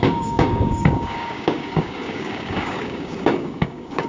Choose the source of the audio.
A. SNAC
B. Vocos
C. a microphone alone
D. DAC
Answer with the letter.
D